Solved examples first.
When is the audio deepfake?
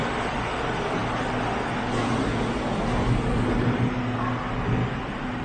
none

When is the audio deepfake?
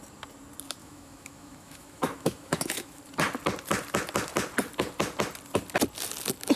0.8-3.0